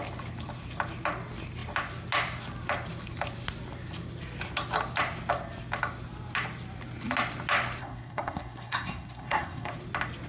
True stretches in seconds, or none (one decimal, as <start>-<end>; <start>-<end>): 0.0-7.8; 9.7-10.3

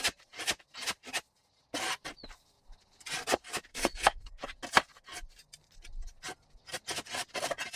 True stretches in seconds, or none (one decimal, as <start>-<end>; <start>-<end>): 0.0-3.7; 4.3-7.8

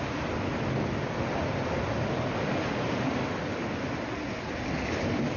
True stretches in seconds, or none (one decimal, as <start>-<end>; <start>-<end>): 0.0-5.4